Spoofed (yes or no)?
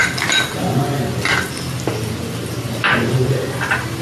no